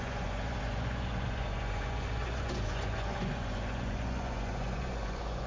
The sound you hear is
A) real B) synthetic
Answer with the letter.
B